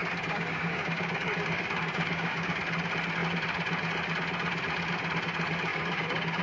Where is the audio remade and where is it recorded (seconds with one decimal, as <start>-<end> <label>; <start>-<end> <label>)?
0.0-2.6 remade; 2.6-5.7 recorded; 5.7-6.4 remade

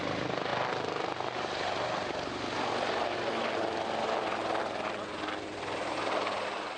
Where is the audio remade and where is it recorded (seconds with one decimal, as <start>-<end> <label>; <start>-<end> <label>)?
0.0-6.8 recorded

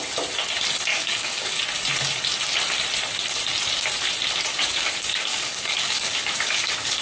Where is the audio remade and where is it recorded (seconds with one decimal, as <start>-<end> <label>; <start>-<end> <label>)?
0.0-0.9 recorded; 0.9-1.6 remade; 1.6-4.5 recorded; 4.5-7.0 remade

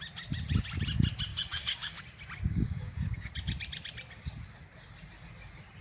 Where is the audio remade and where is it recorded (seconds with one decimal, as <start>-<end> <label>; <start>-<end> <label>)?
0.0-1.3 recorded; 1.3-2.0 remade; 2.0-2.5 recorded; 2.5-3.3 remade; 3.3-5.8 recorded

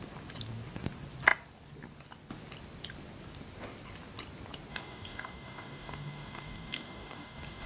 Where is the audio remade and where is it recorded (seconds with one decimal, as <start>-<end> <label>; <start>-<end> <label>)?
0.0-4.7 recorded; 4.7-7.7 remade

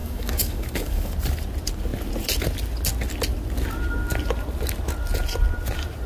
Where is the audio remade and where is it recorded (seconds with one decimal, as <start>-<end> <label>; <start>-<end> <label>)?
0.0-1.1 remade; 1.1-6.1 recorded

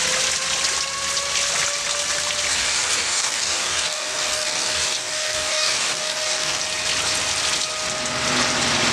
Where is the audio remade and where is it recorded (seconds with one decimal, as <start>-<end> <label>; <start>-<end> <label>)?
0.0-2.5 recorded; 2.5-6.6 remade; 6.6-8.9 recorded